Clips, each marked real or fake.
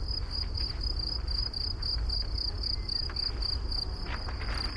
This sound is real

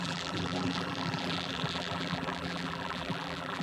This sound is fake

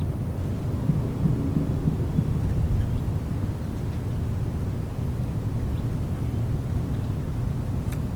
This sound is real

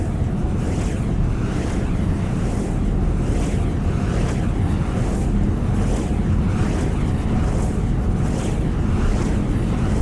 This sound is real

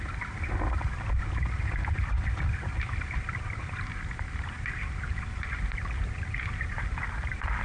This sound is real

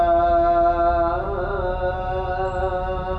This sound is real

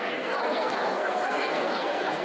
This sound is fake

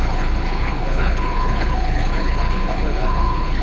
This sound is fake